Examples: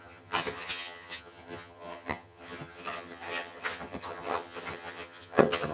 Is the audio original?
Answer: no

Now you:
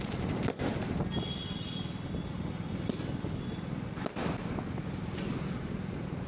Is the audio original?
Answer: yes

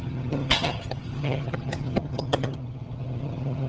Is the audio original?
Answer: no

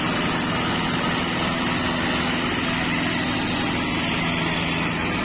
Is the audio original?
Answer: yes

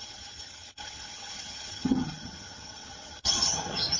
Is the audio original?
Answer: no